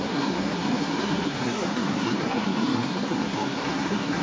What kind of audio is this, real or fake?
fake